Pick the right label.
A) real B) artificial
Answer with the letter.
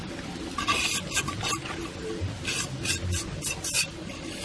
A